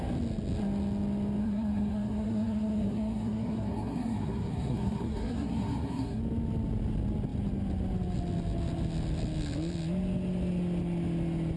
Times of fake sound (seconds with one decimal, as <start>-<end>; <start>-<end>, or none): 1.4-6.2